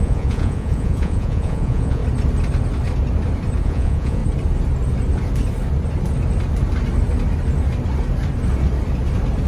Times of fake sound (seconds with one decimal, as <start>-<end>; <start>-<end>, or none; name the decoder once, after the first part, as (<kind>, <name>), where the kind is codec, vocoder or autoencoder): 0.0-2.0 (vocoder, Vocos); 3.6-4.2